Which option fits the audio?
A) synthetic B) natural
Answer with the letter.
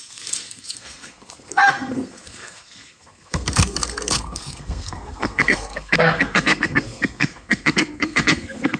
A